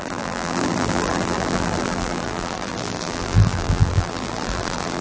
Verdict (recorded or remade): remade